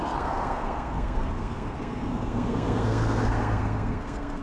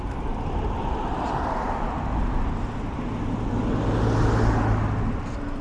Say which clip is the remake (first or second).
first